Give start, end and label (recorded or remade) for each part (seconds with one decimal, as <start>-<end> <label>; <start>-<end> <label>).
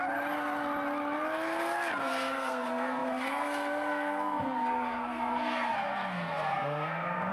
0.0-2.0 recorded; 2.0-7.3 remade